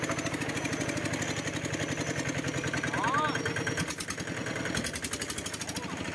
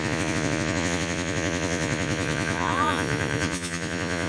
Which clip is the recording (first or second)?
first